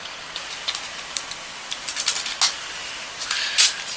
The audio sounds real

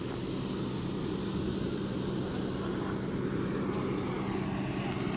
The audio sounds real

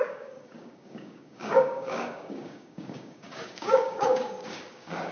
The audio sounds fake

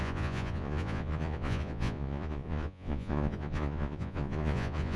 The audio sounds fake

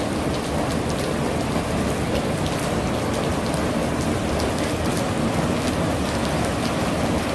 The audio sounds real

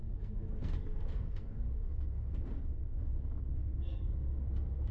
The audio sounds fake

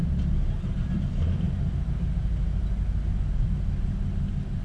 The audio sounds real